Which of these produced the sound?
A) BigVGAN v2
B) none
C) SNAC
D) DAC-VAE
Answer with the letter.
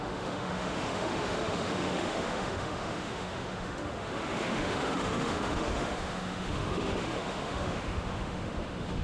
D